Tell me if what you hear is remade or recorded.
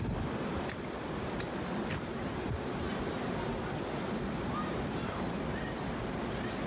recorded